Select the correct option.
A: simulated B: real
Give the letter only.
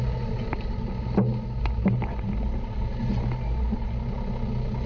B